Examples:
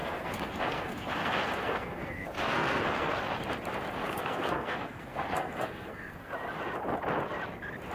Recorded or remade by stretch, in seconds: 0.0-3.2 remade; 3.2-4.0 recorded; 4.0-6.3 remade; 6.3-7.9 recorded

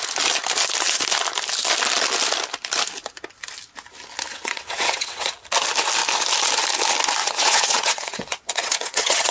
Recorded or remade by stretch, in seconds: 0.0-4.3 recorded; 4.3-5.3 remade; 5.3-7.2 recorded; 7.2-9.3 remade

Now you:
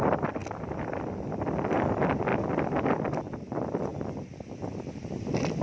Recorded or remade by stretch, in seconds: 0.0-0.4 remade; 0.4-1.9 recorded; 1.9-3.9 remade; 3.9-4.7 recorded; 4.7-5.6 remade